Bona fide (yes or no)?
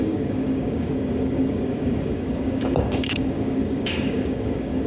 no